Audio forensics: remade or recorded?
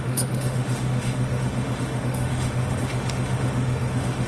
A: remade